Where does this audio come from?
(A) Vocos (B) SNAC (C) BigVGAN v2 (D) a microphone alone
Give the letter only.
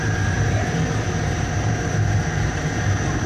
C